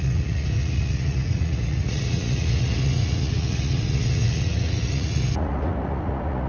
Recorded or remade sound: remade